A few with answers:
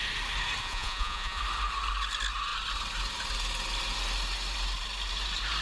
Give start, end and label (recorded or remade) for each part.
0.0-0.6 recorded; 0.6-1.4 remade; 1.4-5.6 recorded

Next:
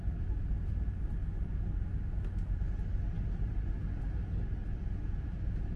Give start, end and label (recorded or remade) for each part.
0.0-4.6 recorded; 4.6-5.3 remade; 5.3-5.8 recorded

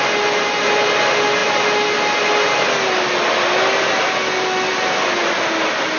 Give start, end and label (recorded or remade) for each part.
0.0-6.0 recorded